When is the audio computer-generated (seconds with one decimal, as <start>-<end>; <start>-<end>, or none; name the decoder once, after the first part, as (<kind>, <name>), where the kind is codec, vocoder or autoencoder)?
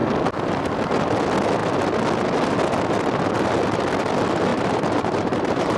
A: 4.5-5.8 (vocoder, BigVGAN v2)